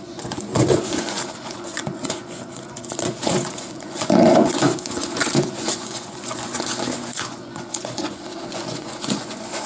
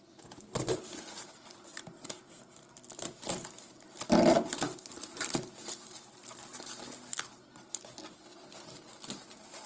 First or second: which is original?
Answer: second